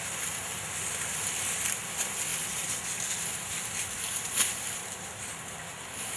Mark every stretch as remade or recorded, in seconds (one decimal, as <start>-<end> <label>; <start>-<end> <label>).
0.0-2.3 recorded; 2.3-5.0 remade; 5.0-6.2 recorded